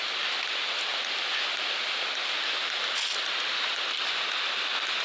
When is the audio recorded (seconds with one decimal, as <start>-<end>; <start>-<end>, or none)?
0.0-0.9; 3.7-5.0